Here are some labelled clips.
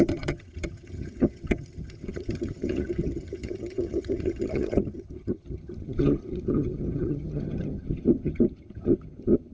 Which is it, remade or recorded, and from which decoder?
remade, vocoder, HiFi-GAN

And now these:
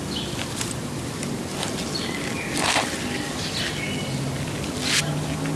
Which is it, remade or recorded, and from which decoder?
recorded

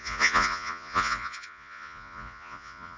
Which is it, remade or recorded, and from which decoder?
remade, vocoder, Vocos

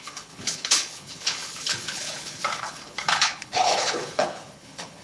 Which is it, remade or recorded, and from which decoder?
remade, codec, HILCodec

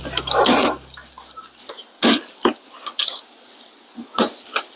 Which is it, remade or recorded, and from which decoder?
recorded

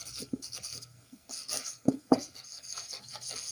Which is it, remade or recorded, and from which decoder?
remade, codec, SNAC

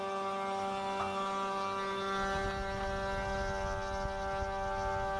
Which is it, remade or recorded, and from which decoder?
recorded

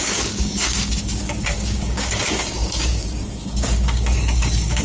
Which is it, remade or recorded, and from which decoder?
remade, codec, DAC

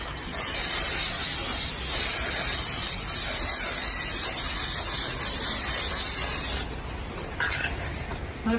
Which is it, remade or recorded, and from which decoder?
recorded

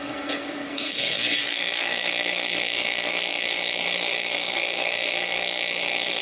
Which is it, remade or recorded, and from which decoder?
remade, codec, SNAC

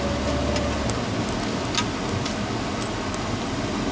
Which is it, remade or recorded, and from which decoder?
recorded